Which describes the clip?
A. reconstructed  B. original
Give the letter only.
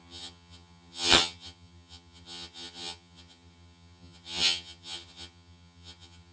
A